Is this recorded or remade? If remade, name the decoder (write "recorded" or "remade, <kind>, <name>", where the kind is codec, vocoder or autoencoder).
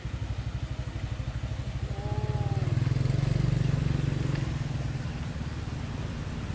recorded